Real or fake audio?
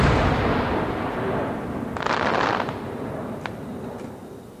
real